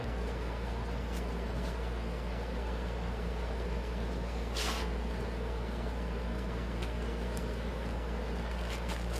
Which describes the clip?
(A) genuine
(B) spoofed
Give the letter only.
B